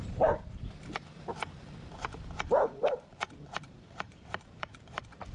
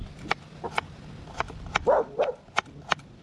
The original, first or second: second